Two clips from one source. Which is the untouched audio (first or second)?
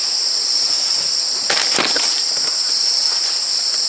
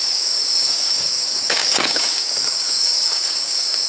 first